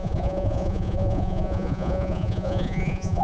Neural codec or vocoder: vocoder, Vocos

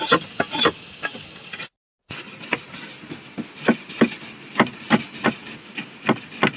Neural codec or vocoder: none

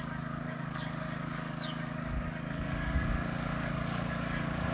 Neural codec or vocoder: codec, DAC